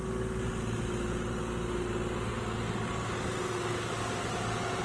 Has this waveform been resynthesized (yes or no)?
no